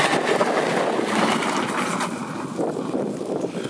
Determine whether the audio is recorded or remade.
recorded